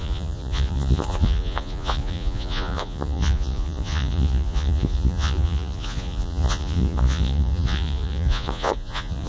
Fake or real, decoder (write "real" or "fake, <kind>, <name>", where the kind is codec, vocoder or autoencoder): fake, vocoder, Vocos